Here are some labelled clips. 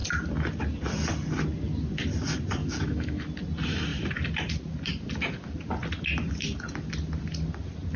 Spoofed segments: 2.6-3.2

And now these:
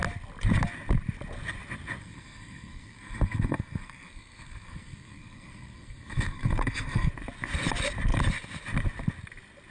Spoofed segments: 2.0-7.1

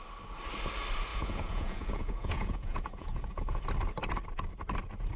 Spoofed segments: 1.1-3.6

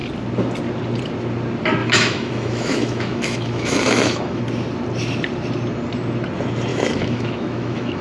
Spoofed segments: 1.8-4.4; 6.7-8.0

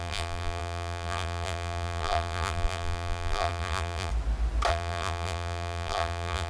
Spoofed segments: 0.0-4.1; 4.7-6.5